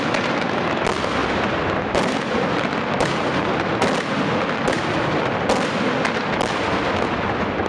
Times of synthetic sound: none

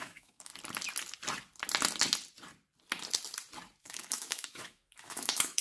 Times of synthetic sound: 0.0-0.5 (autoencoder, DAC-VAE); 3.8-5.6